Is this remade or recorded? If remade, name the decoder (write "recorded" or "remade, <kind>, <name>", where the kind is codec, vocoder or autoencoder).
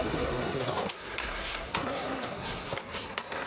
remade, codec, SNAC